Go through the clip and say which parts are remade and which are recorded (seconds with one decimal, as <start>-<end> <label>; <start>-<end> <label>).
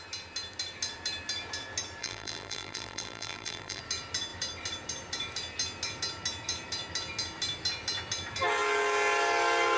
0.0-2.0 recorded; 2.0-3.8 remade; 3.8-9.8 recorded